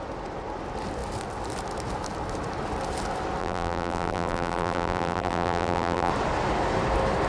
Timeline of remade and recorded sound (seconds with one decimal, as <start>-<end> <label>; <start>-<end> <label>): 0.0-3.4 recorded; 3.4-6.1 remade; 6.1-7.3 recorded